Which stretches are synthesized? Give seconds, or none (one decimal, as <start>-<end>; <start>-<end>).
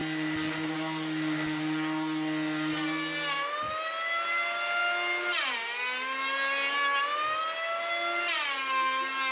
none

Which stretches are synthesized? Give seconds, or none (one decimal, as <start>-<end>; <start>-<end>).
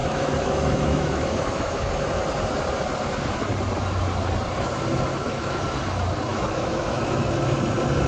0.0-1.9; 5.1-5.6; 6.3-7.2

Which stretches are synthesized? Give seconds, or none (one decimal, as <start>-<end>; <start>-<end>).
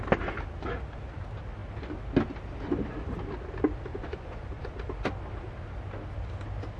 3.9-4.7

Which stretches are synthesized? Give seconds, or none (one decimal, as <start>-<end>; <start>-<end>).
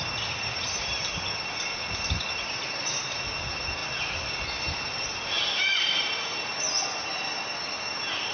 none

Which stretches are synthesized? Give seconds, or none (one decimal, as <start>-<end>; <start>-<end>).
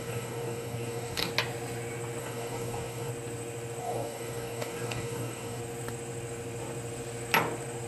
0.0-1.3; 2.2-3.1; 3.8-5.6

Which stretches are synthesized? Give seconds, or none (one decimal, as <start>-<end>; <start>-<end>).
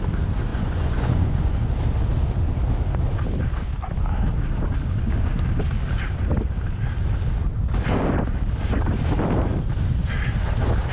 0.5-1.7